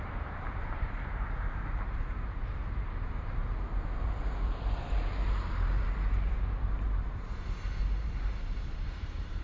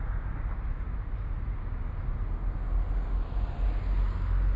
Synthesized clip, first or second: first